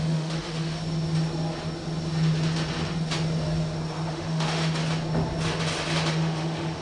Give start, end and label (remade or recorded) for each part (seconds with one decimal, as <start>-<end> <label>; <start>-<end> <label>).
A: 0.0-0.8 remade; 0.8-4.1 recorded; 4.1-4.8 remade; 4.8-6.1 recorded; 6.1-6.8 remade